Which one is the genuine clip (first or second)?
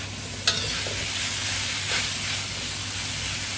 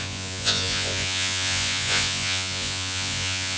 first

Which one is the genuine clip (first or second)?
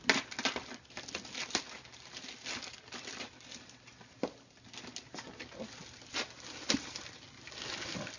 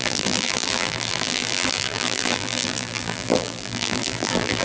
first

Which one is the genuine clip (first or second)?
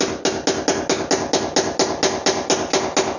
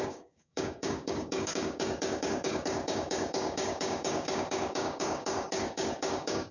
first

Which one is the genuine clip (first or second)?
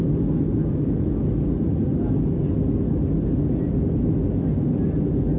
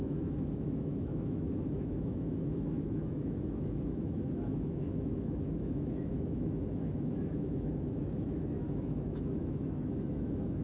first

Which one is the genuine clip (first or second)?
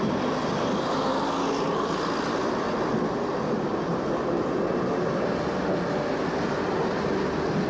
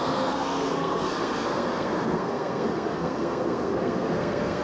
first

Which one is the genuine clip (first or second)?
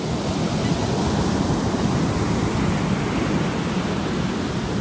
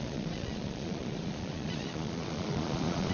first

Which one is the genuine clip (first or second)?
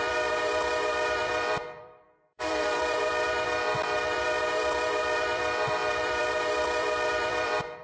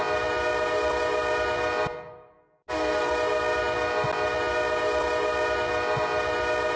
second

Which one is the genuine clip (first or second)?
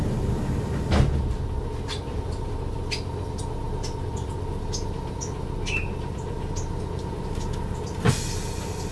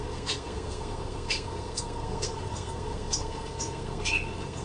first